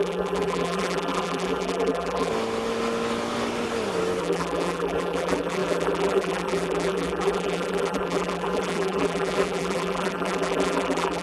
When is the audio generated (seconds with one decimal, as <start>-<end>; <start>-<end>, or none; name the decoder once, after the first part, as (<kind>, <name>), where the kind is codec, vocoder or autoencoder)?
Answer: 0.0-2.3 (vocoder, BigVGAN v2); 4.2-11.2